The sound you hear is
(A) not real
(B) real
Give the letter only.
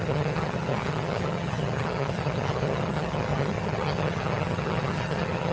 A